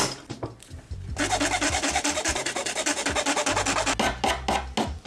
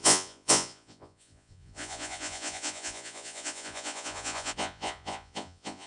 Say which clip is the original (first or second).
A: first